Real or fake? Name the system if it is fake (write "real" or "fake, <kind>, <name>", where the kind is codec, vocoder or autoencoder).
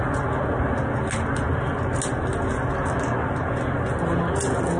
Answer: real